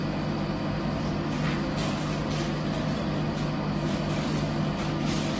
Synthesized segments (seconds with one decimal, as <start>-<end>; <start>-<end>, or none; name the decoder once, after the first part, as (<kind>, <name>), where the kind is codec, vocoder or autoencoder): none